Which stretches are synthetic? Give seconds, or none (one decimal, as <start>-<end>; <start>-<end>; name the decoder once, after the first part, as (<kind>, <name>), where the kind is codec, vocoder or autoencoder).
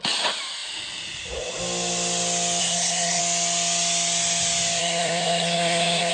2.6-3.2 (codec, SNAC); 4.8-6.1